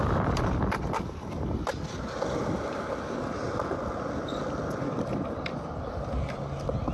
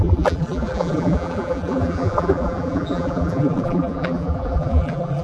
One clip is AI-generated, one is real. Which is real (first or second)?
first